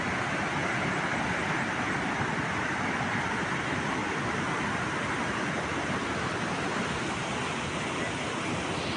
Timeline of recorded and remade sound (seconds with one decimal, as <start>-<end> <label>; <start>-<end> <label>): 0.0-9.0 recorded